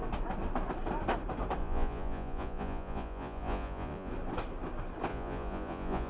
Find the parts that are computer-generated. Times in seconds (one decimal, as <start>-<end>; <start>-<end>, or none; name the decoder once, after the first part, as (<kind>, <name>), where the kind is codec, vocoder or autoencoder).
1.6-4.1 (vocoder, Vocos); 5.1-6.1